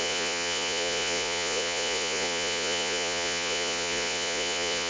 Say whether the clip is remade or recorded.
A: remade